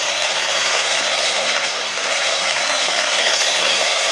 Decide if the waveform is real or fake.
fake